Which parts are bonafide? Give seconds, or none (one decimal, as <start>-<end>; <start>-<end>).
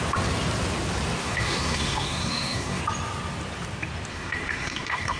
0.0-1.2; 2.8-4.1